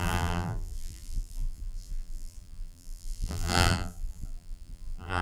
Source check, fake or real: fake